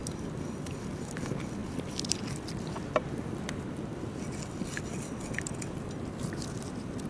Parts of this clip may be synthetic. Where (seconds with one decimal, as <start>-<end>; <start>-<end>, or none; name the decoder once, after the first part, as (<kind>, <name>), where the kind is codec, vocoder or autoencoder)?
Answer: none